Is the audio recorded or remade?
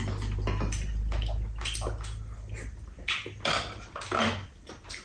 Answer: recorded